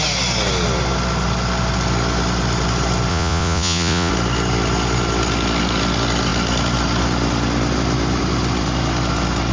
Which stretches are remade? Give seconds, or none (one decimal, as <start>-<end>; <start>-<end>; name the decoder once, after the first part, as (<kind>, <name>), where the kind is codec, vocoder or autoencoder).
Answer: 3.1-4.1 (vocoder, Vocos)